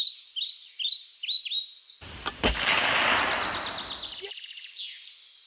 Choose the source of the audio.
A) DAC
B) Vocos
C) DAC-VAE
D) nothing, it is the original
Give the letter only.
D